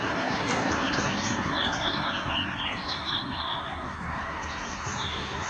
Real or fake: fake